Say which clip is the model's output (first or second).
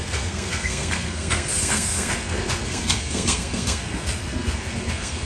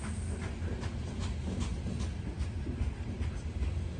first